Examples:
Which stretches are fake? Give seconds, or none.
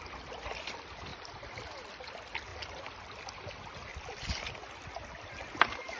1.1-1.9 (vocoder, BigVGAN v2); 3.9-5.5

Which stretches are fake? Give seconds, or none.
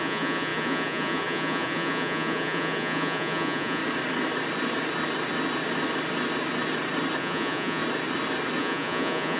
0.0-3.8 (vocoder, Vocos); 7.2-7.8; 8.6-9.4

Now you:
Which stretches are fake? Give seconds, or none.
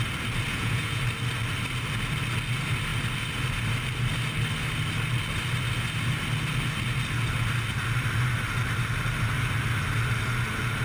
0.5-1.0 (vocoder, Vocos)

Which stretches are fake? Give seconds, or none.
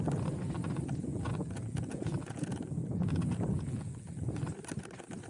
1.1-4.3 (vocoder, Vocos)